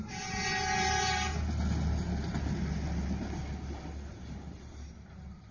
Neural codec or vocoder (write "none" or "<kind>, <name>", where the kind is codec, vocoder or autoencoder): none